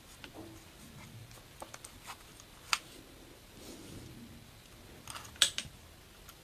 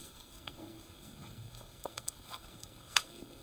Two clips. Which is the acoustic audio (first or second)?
first